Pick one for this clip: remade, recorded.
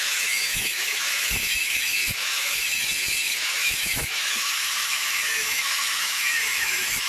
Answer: remade